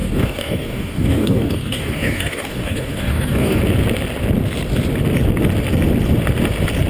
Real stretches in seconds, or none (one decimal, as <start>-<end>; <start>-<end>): 3.6-6.9